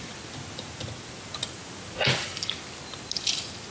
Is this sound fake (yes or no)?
no